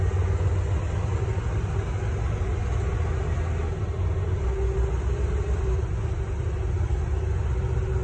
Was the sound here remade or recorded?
recorded